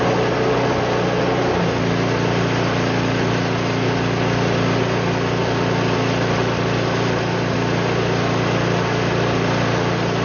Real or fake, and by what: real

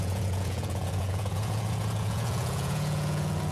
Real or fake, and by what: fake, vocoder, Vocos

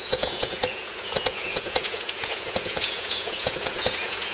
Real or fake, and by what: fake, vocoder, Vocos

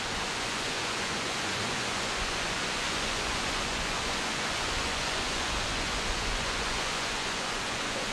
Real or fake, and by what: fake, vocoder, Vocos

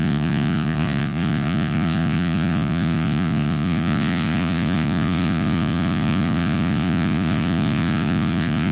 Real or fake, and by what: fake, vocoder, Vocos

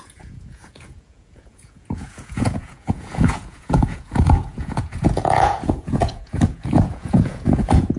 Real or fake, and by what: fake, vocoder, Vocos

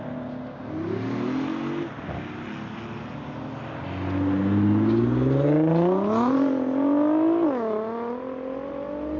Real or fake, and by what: real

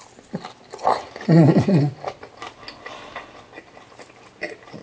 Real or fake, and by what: real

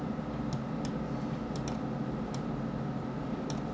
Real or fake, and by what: real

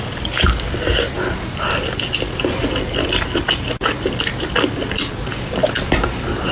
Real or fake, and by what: real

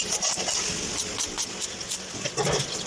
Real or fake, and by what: real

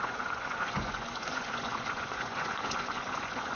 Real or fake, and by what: fake, vocoder, Vocos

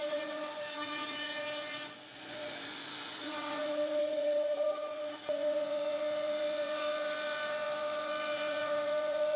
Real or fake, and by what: fake, vocoder, Vocos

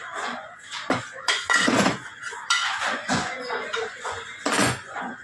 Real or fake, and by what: fake, vocoder, Vocos